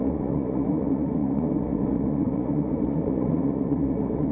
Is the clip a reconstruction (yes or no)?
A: yes